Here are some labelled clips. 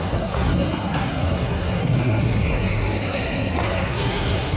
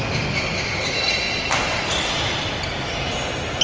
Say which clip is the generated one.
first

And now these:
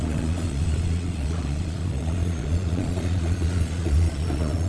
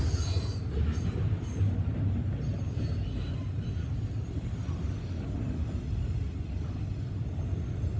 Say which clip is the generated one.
first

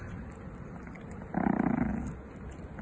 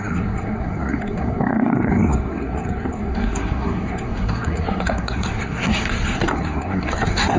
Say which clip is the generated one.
second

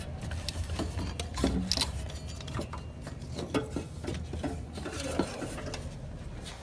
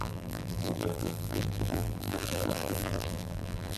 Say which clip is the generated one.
second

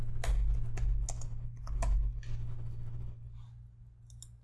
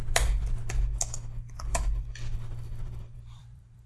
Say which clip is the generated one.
second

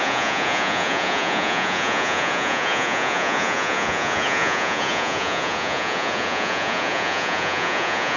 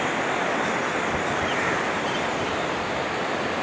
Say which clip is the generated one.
first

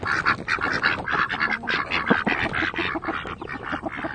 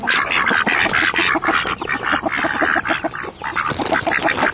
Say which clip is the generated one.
second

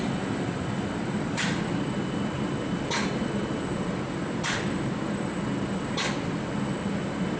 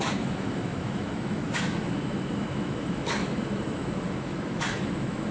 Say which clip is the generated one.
second